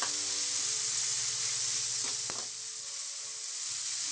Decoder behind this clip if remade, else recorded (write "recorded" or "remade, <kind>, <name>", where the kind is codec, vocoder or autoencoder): recorded